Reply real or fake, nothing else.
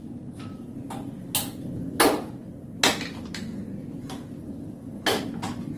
real